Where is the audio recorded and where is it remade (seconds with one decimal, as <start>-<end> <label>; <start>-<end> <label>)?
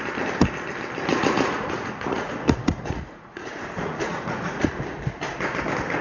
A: 0.0-1.1 recorded; 1.1-4.7 remade; 4.7-6.0 recorded